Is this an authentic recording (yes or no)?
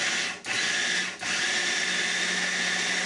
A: yes